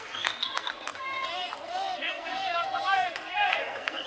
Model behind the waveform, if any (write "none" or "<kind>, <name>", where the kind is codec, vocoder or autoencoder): codec, SNAC